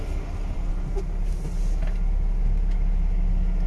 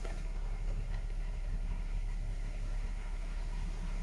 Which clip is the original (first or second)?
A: first